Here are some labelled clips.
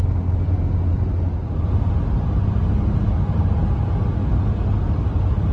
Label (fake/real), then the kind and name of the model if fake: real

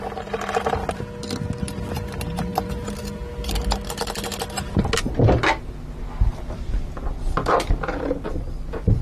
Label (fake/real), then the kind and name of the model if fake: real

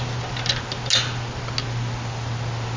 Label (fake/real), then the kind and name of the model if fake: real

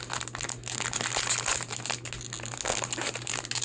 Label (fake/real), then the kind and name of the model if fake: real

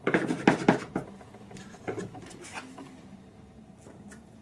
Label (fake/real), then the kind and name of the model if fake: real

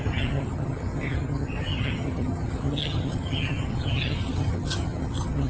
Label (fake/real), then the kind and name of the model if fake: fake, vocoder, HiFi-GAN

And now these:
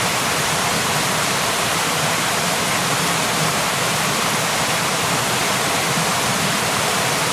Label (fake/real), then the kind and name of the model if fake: fake, vocoder, BigVGAN v2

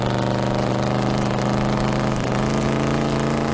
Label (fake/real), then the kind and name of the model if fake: real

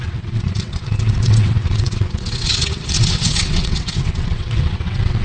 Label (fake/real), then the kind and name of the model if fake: fake, vocoder, WaveNeXt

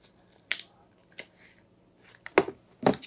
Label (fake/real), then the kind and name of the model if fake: real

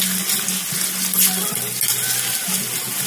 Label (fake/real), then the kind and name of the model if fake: real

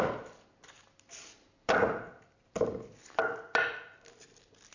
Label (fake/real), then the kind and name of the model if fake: real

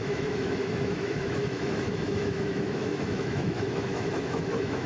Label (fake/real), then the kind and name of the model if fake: fake, autoencoder, DAC-VAE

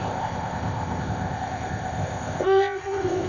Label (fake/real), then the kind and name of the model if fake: fake, codec, ZipCodec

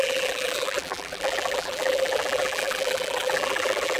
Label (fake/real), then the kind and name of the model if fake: fake, vocoder, BigVGAN v2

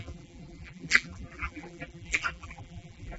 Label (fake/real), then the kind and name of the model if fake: fake, vocoder, BigVGAN v2